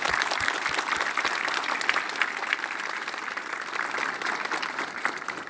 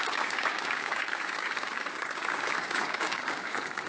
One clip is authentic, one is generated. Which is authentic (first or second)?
first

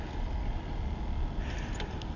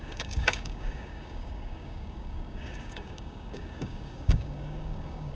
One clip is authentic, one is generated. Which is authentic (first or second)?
first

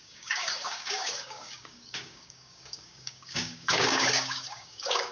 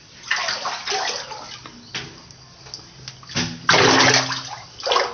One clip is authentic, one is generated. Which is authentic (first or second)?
second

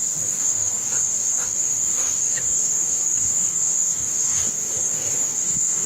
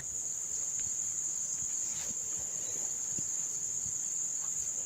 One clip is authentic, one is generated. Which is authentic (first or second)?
second